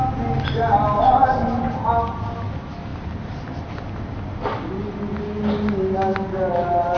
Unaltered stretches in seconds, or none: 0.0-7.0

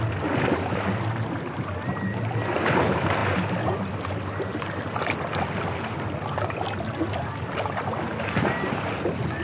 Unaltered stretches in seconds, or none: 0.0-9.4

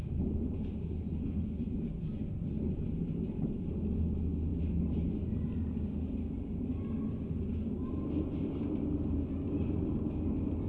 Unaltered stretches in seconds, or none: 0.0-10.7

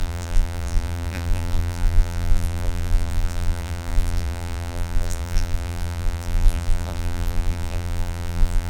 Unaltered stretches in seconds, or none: none

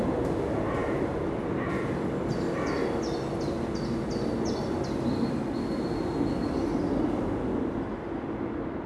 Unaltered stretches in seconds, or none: 0.0-8.9

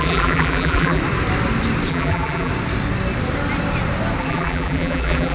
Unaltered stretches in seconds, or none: 1.0-1.9; 2.5-4.2